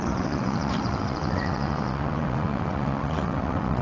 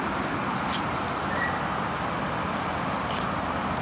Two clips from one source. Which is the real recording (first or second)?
second